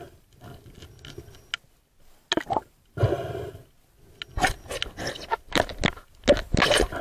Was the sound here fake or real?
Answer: real